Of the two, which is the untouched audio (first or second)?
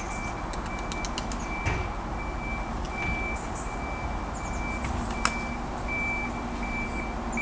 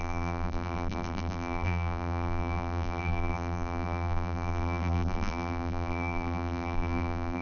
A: first